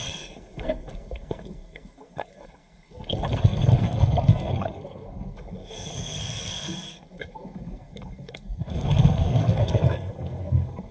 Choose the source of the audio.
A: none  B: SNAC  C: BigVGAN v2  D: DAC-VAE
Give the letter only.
B